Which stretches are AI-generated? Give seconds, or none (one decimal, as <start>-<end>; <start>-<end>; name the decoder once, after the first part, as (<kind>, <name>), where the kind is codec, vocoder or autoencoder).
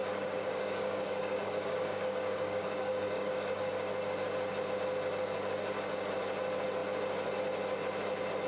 0.0-3.6 (codec, DAC)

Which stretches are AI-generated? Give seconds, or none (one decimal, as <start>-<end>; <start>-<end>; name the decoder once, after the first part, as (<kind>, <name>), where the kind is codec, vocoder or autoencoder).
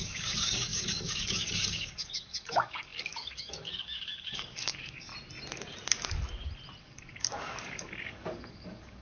0.0-5.1 (codec, DAC); 6.8-9.0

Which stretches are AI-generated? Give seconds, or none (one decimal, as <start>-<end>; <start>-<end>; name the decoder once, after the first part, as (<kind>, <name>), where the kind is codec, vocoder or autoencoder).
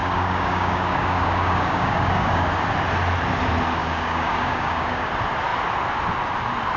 0.0-2.5 (codec, DAC); 3.8-5.1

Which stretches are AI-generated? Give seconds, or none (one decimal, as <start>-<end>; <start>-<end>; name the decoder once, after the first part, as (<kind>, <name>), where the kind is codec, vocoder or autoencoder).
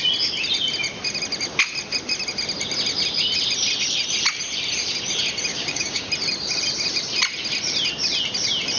5.5-6.1 (codec, DAC)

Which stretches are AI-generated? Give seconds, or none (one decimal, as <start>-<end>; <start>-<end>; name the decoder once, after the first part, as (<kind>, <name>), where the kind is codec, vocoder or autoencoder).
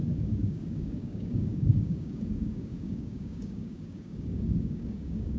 0.0-5.4 (codec, DAC)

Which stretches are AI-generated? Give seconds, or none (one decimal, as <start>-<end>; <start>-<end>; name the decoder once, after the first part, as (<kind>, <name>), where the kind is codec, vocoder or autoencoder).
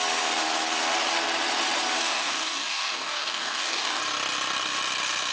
2.0-4.0 (codec, DAC)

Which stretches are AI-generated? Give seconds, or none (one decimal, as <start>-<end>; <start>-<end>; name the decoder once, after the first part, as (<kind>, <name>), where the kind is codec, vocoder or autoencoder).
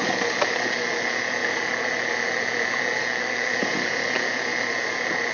3.0-3.5 (codec, DAC)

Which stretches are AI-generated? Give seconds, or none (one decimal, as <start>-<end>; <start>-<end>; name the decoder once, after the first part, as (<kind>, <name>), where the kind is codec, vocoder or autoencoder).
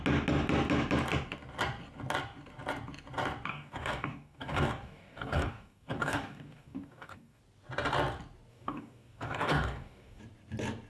3.5-7.4 (codec, DAC); 8.5-10.2